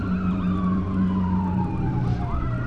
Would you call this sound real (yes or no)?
no